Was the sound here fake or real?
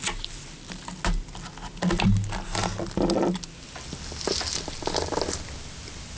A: real